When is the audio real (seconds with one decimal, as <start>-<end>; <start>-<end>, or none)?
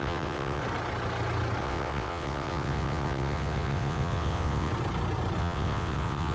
0.6-1.6; 4.7-5.4